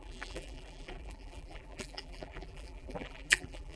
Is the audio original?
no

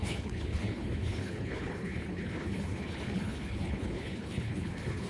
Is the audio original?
no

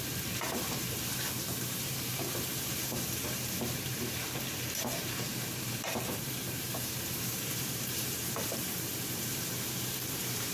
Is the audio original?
no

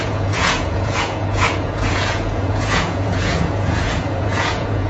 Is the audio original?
no